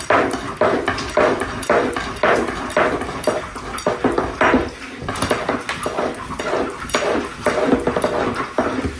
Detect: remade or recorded recorded